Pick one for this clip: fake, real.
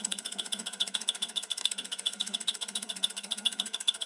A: fake